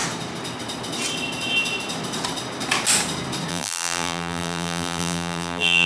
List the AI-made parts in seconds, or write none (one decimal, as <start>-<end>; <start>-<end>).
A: 3.5-5.9